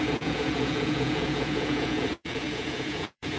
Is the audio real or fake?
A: fake